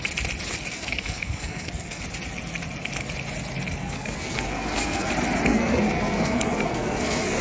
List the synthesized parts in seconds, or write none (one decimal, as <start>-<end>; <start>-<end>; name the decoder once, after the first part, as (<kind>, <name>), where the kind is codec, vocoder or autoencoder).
0.7-2.0 (codec, SNAC); 3.8-5.1; 5.5-7.4